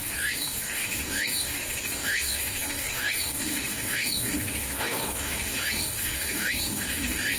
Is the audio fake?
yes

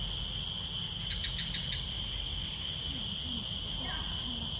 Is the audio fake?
no